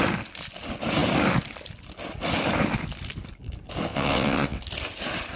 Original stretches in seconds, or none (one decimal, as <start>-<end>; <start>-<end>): 0.0-3.9; 4.6-5.4